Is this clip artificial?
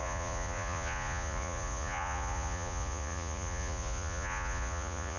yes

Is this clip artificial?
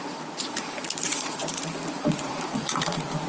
yes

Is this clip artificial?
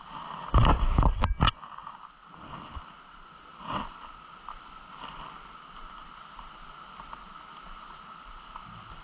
no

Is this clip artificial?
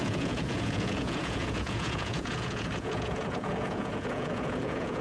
yes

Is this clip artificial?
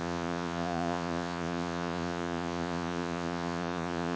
yes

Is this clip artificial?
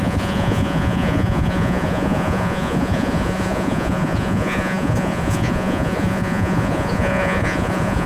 yes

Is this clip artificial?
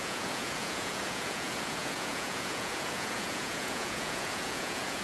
yes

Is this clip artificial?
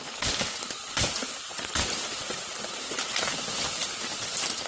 no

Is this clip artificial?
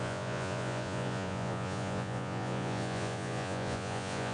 yes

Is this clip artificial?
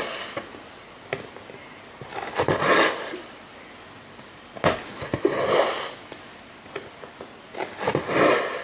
no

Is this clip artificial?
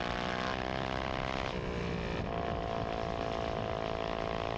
no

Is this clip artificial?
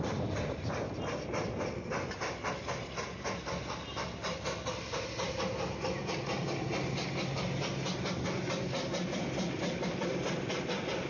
no